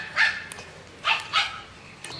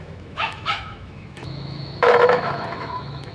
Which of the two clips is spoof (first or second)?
second